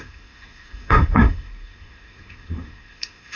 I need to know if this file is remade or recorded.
remade